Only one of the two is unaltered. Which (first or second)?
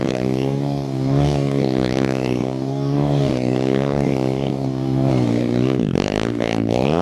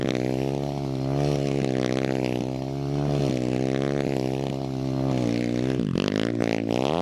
second